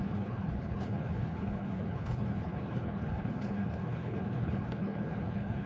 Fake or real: fake